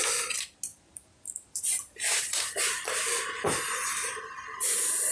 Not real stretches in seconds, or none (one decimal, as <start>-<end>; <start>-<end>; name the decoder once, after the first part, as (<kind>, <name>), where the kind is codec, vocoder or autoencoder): 0.7-2.9 (vocoder, BigVGAN v2)